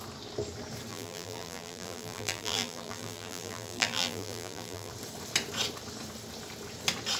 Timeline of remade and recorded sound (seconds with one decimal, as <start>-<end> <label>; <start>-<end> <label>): 0.0-0.9 recorded; 0.9-4.9 remade; 4.9-7.2 recorded